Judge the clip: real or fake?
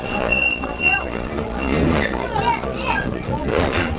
fake